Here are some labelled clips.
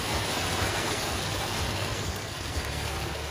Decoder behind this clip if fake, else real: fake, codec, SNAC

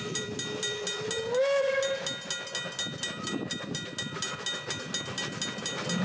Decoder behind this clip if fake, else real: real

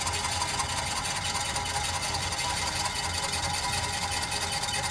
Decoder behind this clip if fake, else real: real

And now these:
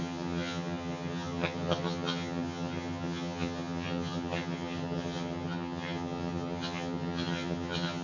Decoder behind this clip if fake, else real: fake, vocoder, HiFi-GAN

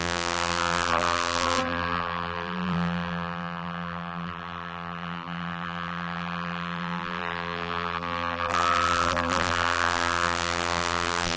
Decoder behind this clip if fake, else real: fake, vocoder, BigVGAN v2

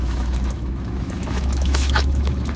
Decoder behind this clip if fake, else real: fake, autoencoder, DAC-VAE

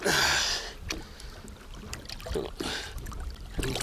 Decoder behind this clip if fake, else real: real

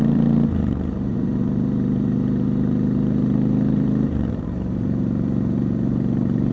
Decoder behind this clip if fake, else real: fake, vocoder, BigVGAN v2